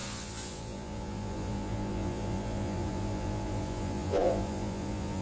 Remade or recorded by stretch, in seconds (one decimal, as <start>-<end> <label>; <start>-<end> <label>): 0.0-5.2 remade